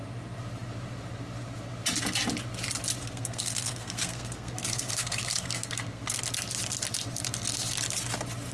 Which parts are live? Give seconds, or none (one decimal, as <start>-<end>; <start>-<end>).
0.0-3.0; 6.2-8.5